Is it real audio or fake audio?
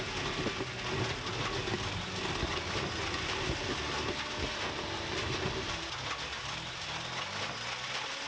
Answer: real